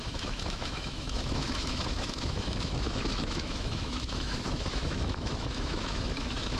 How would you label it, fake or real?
fake